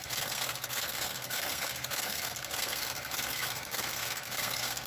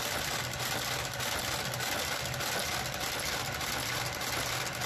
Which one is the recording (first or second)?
second